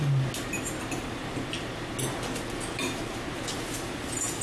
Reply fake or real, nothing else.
real